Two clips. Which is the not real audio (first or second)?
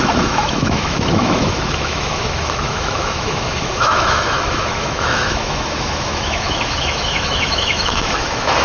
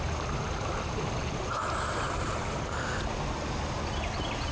first